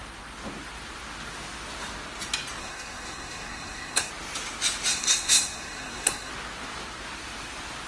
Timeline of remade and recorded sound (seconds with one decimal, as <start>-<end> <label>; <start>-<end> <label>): 0.0-2.6 recorded; 2.6-4.1 remade; 4.1-4.9 recorded; 4.9-6.3 remade; 6.3-7.9 recorded